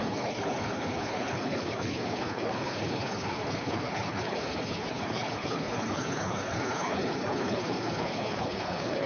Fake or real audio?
fake